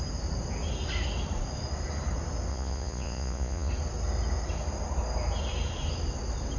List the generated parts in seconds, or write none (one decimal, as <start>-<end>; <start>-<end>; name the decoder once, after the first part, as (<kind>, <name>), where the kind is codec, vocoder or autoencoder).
2.5-3.7 (vocoder, Vocos)